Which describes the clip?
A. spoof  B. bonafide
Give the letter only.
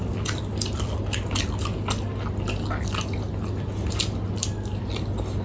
B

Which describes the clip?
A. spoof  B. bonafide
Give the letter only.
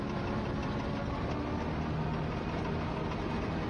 B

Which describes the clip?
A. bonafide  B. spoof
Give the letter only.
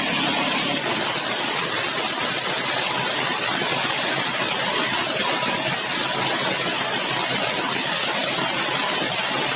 A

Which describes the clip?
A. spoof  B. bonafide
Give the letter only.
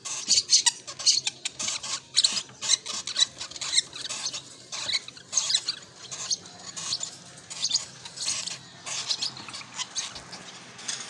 B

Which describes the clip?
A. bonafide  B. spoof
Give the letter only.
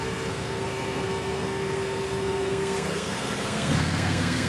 B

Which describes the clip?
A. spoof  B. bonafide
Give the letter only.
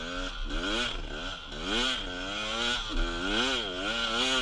B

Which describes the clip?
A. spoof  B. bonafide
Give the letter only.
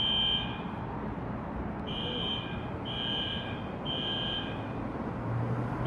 B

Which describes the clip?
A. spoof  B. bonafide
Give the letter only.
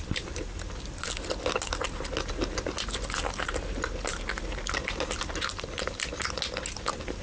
B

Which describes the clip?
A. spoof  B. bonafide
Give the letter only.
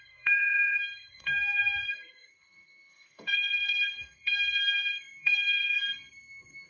A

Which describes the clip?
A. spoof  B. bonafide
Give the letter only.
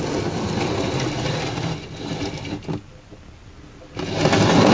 B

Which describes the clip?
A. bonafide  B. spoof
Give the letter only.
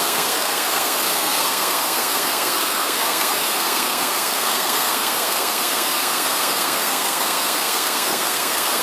B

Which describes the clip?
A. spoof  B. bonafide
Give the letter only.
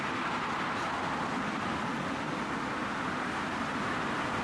B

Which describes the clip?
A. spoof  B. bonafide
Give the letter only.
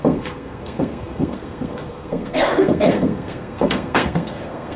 A